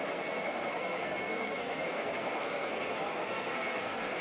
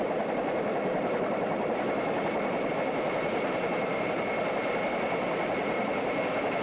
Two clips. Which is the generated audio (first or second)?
first